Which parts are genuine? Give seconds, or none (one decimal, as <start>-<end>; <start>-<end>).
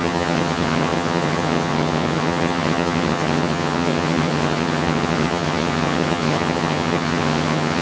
none